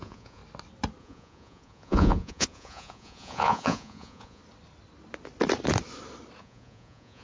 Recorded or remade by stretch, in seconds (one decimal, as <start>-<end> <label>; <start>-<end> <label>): 0.0-0.4 remade; 0.4-1.0 recorded; 1.0-4.4 remade; 4.4-6.4 recorded; 6.4-7.2 remade